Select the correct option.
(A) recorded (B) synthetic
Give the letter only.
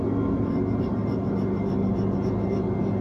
A